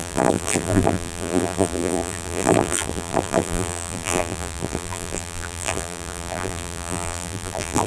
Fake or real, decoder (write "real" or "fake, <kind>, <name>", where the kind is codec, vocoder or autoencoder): fake, vocoder, BigVGAN v2